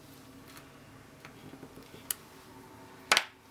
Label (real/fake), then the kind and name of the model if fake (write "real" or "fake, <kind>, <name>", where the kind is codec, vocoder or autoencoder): real